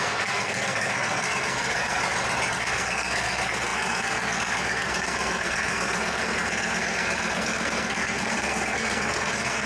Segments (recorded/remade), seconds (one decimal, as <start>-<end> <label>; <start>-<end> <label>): 0.0-2.0 remade; 2.0-2.5 recorded; 2.5-9.7 remade